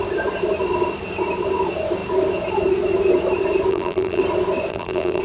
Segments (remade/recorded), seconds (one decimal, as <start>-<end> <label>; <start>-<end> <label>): 0.0-3.7 recorded; 3.7-4.2 remade; 4.2-4.7 recorded; 4.7-5.2 remade